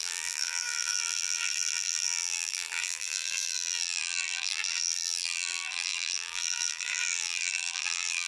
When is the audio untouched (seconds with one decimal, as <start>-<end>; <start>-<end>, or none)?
none